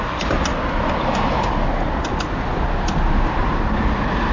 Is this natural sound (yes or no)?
yes